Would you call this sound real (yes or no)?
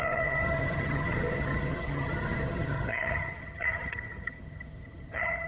no